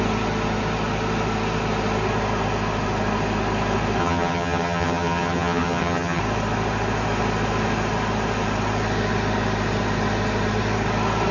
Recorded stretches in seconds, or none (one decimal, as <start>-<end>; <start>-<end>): 0.0-4.0; 6.2-11.3